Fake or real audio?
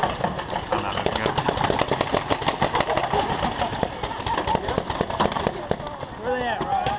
real